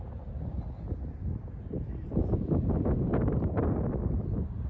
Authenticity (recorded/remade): recorded